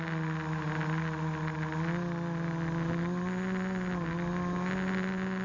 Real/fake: real